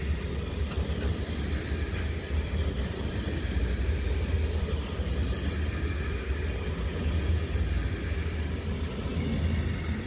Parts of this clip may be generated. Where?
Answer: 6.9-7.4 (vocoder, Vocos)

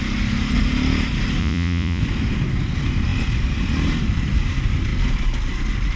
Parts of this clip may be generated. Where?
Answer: 1.4-2.0 (vocoder, Vocos)

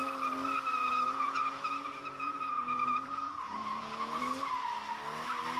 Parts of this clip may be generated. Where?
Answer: 0.8-4.2 (vocoder, Vocos)

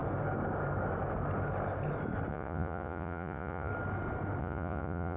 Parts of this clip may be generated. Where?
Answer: 2.3-3.7 (vocoder, Vocos); 4.4-5.2

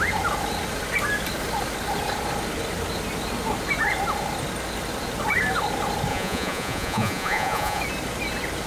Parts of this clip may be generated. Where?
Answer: 6.1-7.8 (vocoder, Vocos)